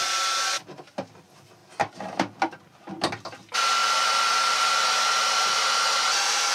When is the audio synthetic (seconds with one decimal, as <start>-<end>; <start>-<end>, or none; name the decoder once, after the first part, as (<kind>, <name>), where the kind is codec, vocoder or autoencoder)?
none